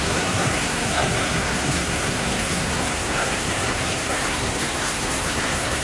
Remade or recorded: remade